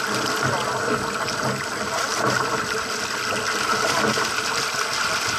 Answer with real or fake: real